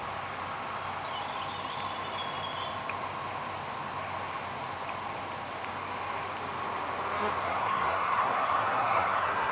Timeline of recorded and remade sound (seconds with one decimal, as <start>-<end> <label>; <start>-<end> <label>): 0.0-7.4 recorded; 7.4-9.5 remade